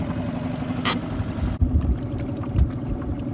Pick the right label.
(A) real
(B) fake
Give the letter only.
A